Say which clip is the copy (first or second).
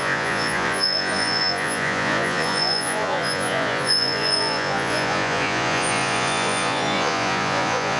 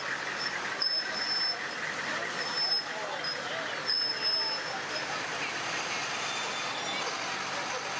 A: first